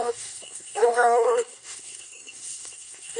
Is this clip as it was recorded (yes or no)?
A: no